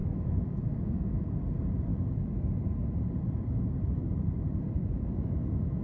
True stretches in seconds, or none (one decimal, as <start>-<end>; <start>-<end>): 1.4-5.8

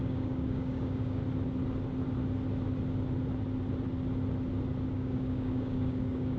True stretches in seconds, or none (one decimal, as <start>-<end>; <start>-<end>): 1.2-4.9

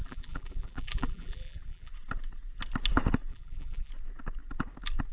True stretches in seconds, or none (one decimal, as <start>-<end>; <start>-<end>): 1.9-3.3; 3.9-5.1

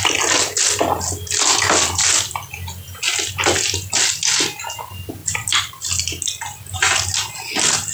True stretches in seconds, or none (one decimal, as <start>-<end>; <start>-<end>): 0.0-5.2; 6.0-7.9

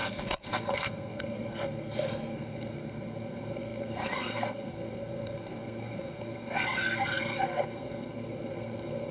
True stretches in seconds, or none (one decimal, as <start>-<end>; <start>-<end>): none

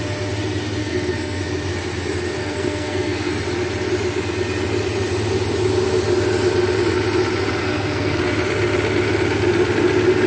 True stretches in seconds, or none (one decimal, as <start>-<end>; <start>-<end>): 0.0-0.8; 1.4-2.4; 3.3-7.6; 8.2-10.3

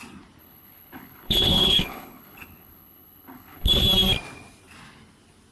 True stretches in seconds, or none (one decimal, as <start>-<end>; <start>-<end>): 0.0-0.4; 3.7-5.5